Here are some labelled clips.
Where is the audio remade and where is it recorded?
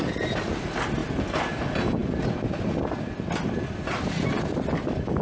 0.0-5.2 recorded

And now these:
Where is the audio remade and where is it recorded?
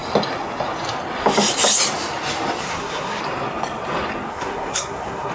0.0-2.6 recorded; 2.6-3.2 remade; 3.2-4.3 recorded; 4.3-5.3 remade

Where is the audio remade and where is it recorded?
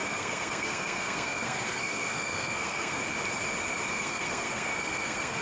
0.0-3.0 remade; 3.0-3.9 recorded; 3.9-5.4 remade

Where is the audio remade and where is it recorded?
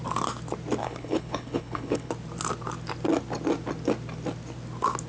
0.0-0.8 recorded; 0.8-2.1 remade; 2.1-5.1 recorded